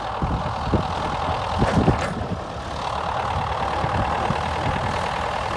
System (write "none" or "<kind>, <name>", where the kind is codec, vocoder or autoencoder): none